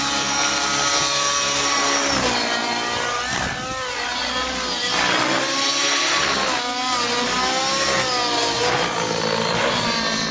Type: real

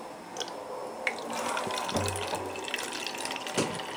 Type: real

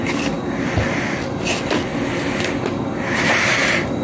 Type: real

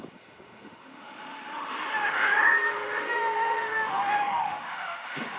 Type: fake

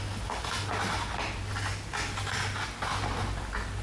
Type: real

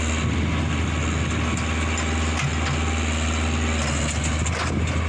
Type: real